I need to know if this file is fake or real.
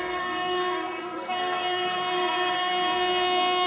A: fake